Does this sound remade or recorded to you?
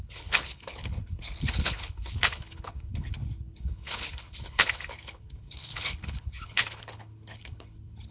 remade